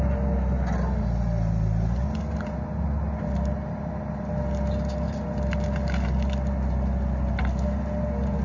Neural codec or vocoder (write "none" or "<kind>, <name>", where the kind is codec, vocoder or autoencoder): none